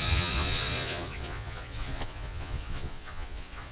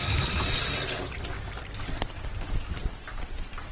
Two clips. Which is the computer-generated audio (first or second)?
first